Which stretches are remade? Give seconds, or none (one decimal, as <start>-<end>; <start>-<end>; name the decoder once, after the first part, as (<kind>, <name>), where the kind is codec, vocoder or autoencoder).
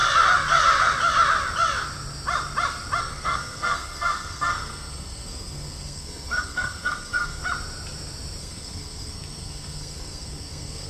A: 3.0-7.4 (codec, SNAC); 8.4-10.9